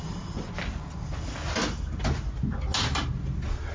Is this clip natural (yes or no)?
yes